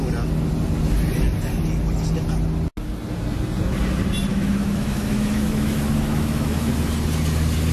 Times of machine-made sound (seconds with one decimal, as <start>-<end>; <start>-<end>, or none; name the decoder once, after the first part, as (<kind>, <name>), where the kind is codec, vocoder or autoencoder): 4.3-6.7 (autoencoder, DAC-VAE)